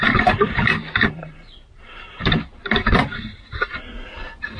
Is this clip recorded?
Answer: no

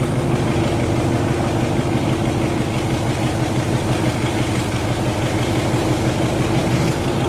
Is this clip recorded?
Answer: yes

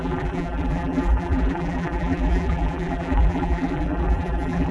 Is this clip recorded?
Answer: no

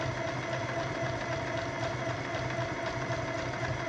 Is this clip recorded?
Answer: yes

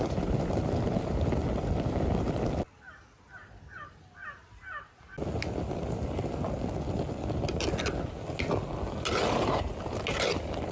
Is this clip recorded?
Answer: yes